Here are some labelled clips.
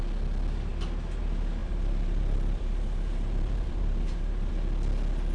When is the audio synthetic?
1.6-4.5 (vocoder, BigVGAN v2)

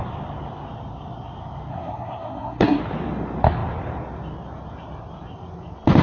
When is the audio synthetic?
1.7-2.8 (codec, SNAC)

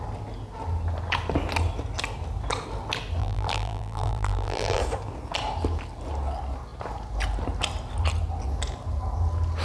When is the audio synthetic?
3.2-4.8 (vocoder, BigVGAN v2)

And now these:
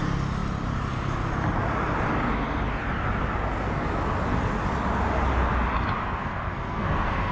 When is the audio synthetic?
6.0-7.3 (codec, SNAC)

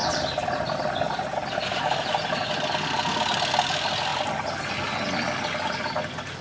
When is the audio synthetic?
none

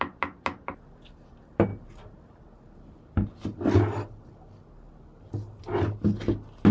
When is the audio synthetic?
none

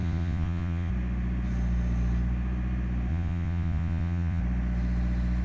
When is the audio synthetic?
0.0-0.9 (vocoder, Vocos); 3.1-4.4

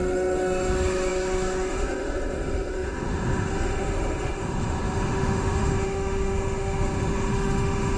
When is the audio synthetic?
0.0-8.0 (autoencoder, DAC-VAE)